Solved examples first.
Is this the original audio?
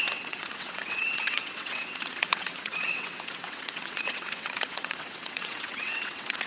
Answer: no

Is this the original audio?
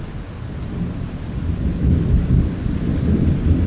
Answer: yes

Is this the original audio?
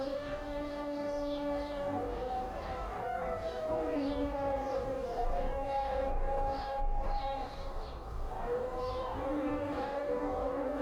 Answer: no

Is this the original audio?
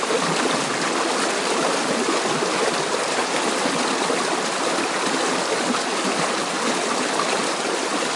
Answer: yes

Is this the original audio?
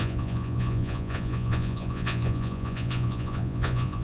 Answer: no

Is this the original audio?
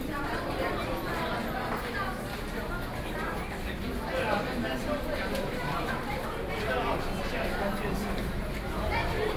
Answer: yes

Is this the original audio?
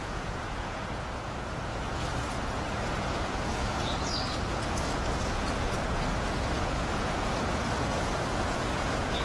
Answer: no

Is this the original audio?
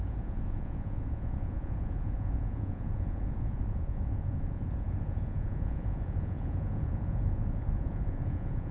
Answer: no